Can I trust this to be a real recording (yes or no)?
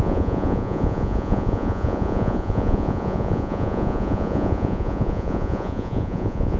no